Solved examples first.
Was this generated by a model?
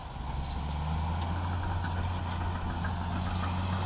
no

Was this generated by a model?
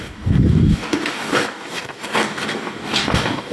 yes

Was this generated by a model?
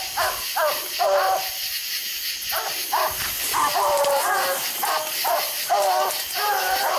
no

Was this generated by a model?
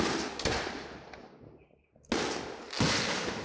no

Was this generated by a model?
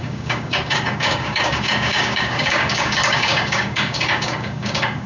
yes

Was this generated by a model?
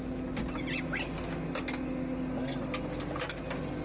no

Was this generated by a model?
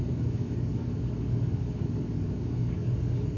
yes